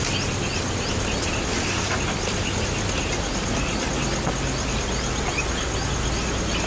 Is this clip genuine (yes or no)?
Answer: yes